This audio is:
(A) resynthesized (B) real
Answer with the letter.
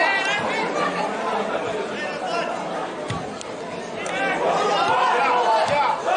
B